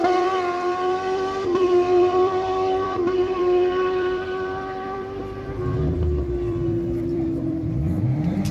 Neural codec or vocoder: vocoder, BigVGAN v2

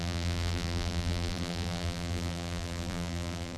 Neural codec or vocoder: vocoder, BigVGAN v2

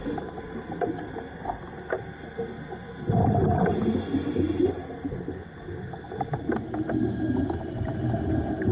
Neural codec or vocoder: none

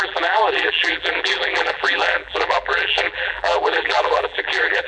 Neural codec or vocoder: vocoder, BigVGAN v2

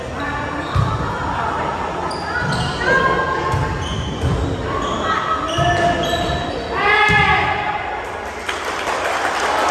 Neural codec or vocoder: none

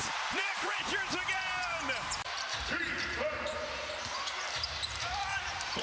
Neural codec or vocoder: vocoder, BigVGAN v2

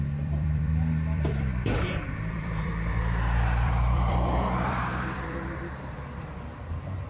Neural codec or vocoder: vocoder, BigVGAN v2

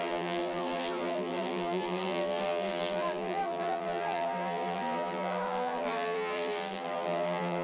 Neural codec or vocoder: vocoder, BigVGAN v2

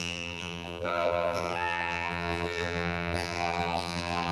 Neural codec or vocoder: vocoder, BigVGAN v2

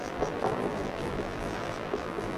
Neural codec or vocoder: vocoder, BigVGAN v2